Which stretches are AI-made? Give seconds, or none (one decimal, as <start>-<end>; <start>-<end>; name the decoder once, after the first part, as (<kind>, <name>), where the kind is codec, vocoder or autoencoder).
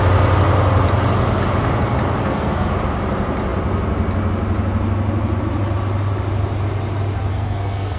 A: 2.2-2.7 (codec, SNAC); 7.3-8.0